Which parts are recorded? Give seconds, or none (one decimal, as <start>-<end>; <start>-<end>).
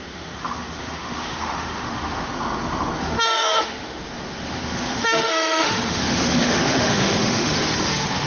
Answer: 2.3-3.0